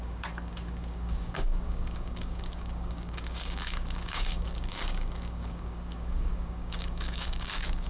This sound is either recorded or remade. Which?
remade